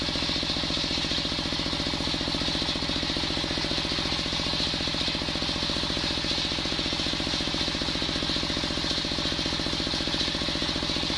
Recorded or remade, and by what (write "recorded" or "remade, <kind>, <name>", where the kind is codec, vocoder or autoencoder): recorded